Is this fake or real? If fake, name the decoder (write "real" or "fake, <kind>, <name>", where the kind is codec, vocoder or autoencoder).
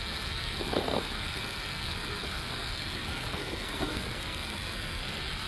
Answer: fake, codec, SNAC